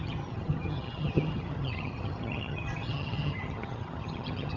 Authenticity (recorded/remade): remade